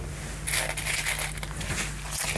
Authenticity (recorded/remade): recorded